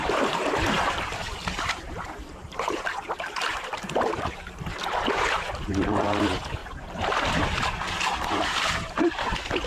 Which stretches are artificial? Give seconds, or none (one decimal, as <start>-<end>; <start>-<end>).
0.0-9.7